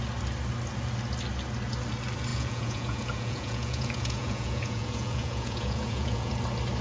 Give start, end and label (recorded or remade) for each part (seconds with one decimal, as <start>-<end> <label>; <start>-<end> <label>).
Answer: 0.0-2.3 recorded; 2.3-6.3 remade; 6.3-6.8 recorded